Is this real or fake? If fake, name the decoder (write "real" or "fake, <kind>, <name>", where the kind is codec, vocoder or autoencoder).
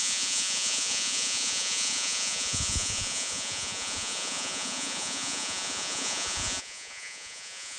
fake, vocoder, Vocos